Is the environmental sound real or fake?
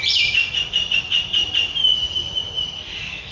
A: real